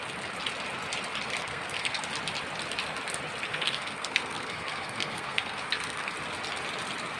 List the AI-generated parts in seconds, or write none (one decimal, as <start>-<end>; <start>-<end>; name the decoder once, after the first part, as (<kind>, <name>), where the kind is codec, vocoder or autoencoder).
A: 1.4-2.0 (codec, SNAC); 3.5-6.1